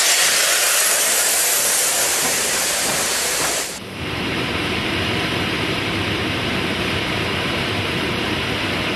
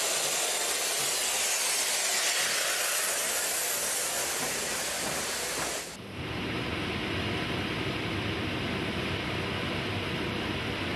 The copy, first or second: first